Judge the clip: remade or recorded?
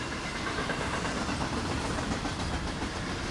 remade